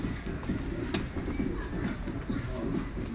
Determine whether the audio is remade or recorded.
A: recorded